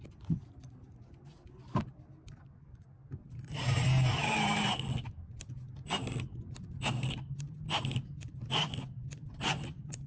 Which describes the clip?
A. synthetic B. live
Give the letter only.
B